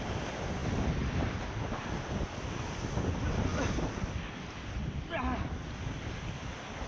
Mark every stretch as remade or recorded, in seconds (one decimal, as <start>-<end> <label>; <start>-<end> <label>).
0.0-6.9 recorded